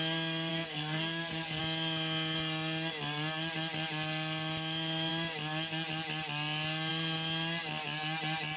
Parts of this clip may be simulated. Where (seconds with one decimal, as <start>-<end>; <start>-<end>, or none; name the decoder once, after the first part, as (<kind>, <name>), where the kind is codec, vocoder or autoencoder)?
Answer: 0.5-1.6 (codec, SNAC)